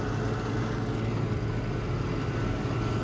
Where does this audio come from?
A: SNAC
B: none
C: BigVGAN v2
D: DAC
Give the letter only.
B